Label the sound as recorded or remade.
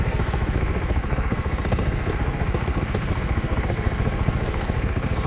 remade